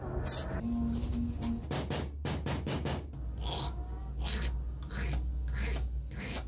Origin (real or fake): real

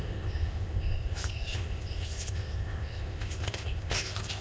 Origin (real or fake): fake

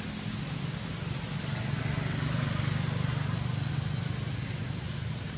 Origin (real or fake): real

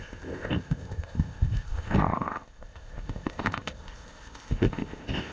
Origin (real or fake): fake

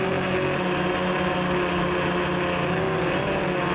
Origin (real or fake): real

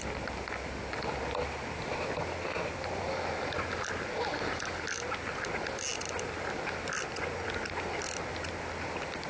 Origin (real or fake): real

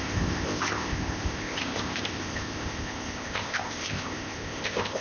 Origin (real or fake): fake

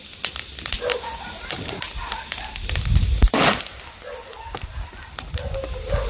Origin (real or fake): real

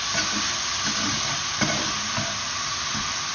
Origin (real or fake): real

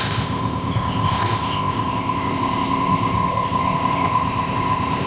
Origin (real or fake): fake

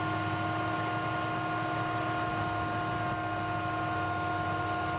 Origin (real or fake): real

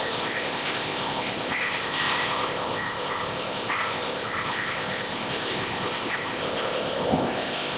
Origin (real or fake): fake